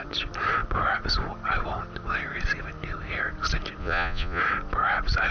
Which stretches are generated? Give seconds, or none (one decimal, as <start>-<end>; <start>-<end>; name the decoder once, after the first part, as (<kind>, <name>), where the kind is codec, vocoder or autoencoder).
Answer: 3.8-4.4 (vocoder, Vocos)

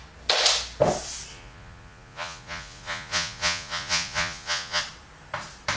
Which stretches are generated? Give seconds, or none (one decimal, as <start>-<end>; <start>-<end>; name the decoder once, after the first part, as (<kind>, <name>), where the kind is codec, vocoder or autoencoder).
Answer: 1.3-4.8 (vocoder, Vocos)

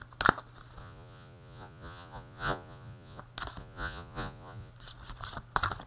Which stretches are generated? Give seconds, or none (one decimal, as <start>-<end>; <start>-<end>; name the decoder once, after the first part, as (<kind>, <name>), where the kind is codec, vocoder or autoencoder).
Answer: 0.8-3.2 (vocoder, Vocos); 3.6-4.7

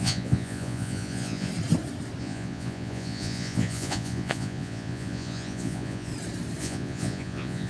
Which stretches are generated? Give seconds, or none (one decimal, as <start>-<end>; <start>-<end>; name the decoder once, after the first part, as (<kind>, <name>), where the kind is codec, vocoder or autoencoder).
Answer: 0.0-1.5 (vocoder, Vocos); 2.2-6.1; 6.6-7.7

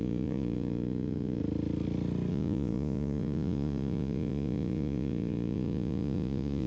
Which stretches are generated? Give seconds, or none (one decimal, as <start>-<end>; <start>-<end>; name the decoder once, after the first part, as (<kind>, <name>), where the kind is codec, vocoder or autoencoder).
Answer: 0.0-1.4 (vocoder, Vocos); 2.3-6.7

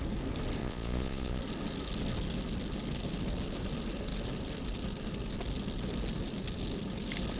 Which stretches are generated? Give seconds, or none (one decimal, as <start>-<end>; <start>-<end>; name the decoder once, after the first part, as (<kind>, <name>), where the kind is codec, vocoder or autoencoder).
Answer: 0.6-1.4 (vocoder, Vocos)